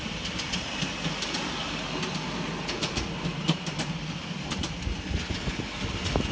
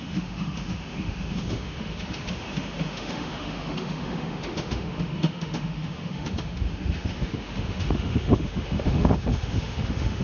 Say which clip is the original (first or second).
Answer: first